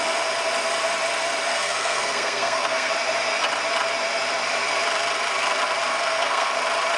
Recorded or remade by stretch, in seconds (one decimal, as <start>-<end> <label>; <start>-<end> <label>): 0.0-1.5 recorded; 1.5-2.9 remade; 2.9-5.9 recorded; 5.9-6.5 remade; 6.5-7.0 recorded